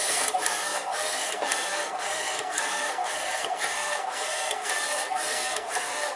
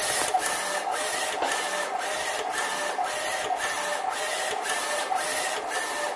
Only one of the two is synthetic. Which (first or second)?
first